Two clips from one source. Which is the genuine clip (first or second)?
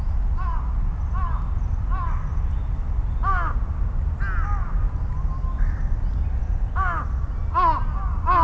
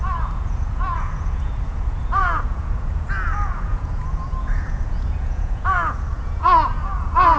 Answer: first